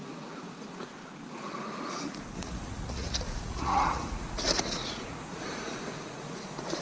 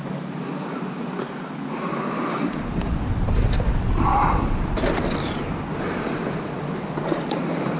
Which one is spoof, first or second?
first